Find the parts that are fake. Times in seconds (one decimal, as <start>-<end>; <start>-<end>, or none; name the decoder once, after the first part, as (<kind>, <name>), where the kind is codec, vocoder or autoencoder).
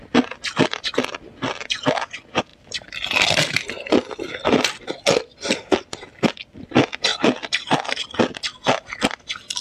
none